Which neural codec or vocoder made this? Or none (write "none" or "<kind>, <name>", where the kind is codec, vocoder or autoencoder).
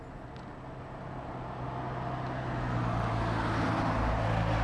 none